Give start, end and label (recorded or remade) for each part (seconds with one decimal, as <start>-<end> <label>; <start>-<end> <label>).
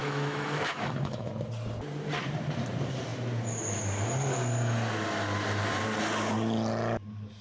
0.0-1.3 remade; 1.3-7.4 recorded